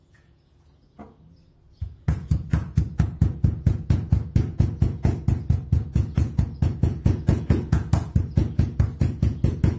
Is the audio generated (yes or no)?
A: yes